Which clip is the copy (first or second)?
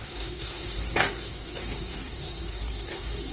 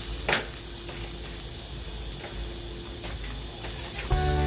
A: first